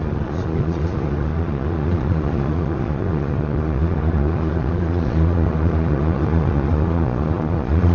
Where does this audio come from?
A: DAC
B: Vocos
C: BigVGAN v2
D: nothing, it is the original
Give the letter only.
B